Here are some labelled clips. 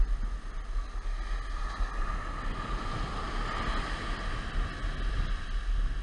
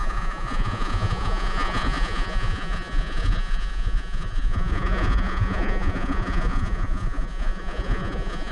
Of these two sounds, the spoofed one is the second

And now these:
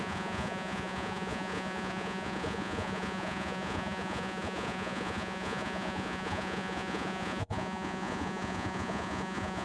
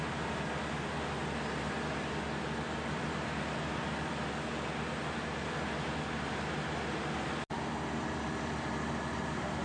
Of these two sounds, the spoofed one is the first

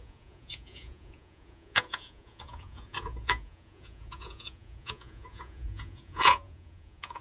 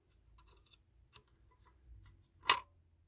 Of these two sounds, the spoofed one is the first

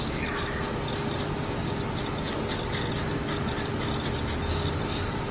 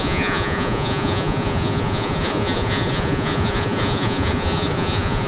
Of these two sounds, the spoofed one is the second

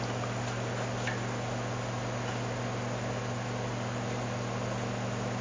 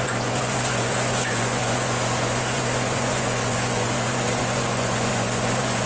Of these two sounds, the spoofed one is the second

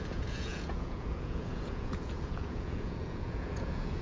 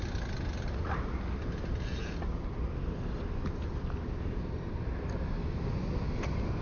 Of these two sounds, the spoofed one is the first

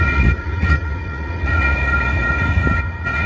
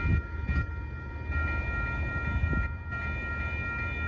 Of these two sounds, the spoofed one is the first